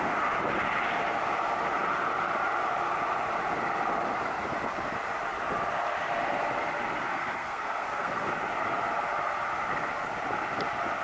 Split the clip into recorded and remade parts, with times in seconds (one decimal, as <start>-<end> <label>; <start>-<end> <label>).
0.0-7.1 recorded; 7.1-8.3 remade; 8.3-11.0 recorded